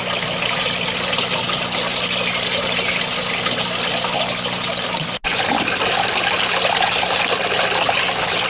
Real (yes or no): yes